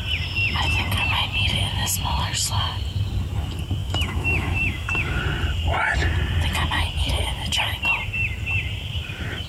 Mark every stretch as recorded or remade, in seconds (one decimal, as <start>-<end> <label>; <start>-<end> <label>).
0.0-3.8 recorded; 3.8-5.2 remade; 5.2-9.5 recorded